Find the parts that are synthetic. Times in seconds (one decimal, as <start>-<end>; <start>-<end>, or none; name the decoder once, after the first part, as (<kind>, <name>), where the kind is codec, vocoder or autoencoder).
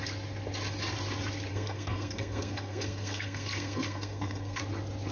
1.5-4.6 (codec, SNAC)